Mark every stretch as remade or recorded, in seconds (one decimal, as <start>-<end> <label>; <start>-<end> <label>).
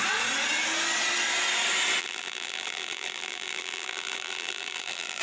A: 0.0-2.0 recorded; 2.0-5.2 remade